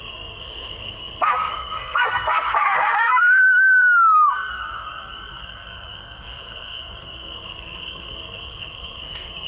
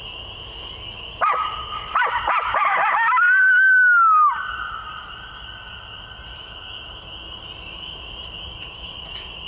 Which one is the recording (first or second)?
second